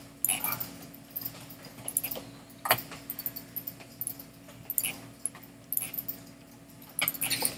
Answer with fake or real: real